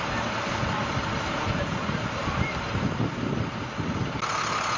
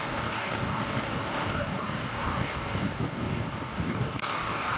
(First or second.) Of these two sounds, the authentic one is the first